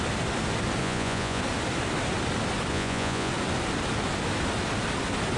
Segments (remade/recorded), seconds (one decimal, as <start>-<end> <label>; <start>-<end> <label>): 0.0-0.8 recorded; 0.8-1.4 remade; 1.4-2.7 recorded; 2.7-3.3 remade; 3.3-5.4 recorded